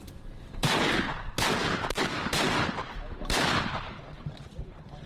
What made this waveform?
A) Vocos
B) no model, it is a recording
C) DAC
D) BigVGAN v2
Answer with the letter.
D